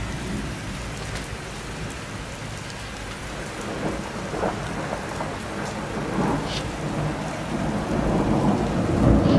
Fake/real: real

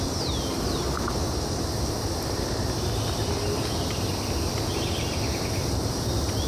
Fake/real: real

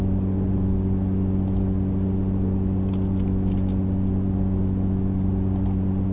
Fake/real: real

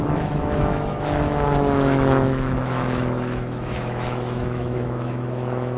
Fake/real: fake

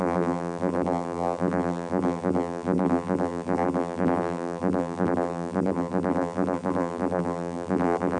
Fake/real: fake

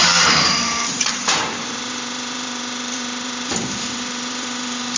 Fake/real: fake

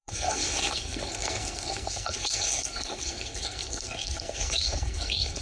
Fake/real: fake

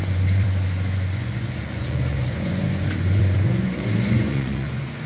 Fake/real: fake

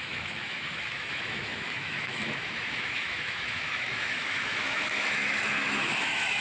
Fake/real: fake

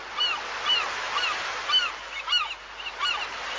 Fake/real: real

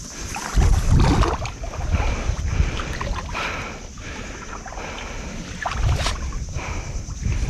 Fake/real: fake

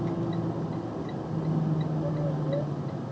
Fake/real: real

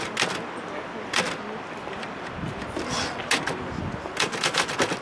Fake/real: real